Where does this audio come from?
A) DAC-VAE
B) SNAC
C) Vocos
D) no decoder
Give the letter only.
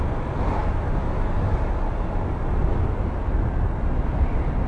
D